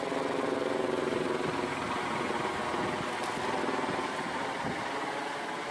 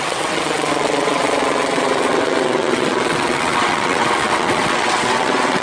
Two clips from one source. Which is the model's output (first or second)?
second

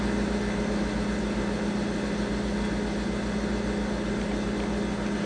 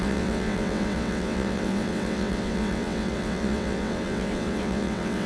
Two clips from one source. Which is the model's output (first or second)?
second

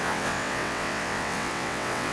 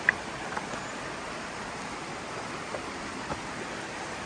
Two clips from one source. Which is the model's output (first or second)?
first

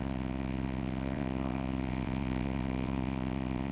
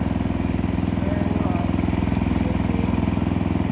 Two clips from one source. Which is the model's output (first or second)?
first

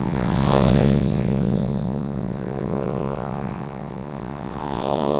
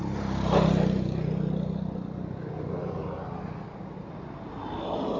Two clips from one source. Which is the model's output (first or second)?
first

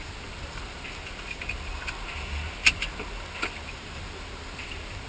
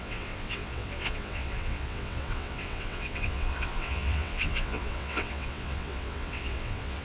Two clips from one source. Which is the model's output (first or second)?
second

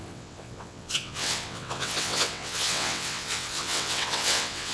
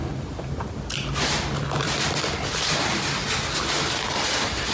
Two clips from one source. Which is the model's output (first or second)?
first